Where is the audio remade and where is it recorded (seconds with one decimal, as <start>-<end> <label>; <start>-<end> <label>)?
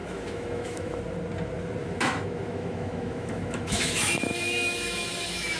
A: 0.0-1.0 remade; 1.0-1.8 recorded; 1.8-5.6 remade